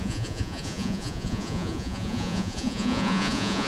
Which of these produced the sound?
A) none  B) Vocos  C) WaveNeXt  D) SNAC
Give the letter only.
B